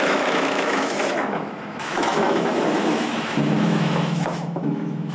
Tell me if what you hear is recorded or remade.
remade